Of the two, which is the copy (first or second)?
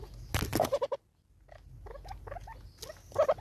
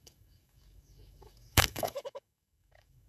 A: second